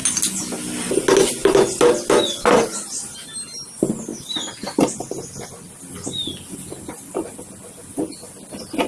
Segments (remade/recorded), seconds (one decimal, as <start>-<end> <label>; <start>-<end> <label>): 0.0-8.9 recorded